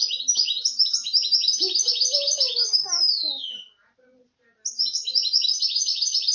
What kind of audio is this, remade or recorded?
recorded